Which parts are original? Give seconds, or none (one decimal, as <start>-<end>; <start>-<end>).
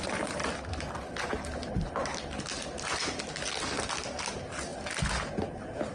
0.0-5.9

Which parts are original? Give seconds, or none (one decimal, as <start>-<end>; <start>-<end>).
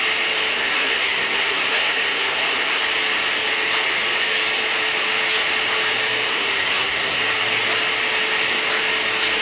0.0-0.5; 2.8-6.3; 7.2-9.4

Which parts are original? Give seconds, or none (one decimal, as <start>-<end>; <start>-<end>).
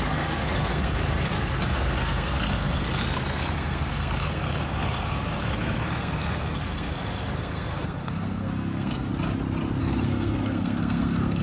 9.1-9.8